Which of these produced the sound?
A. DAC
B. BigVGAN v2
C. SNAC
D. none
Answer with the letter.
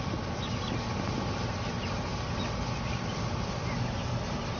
D